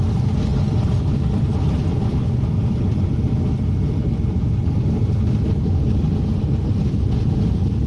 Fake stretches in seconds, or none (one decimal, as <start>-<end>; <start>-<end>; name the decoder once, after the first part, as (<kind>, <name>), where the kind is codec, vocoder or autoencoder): 0.5-3.7 (vocoder, BigVGAN v2)